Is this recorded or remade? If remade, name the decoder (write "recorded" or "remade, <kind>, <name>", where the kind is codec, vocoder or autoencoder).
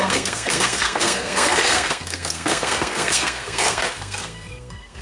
remade, codec, SNAC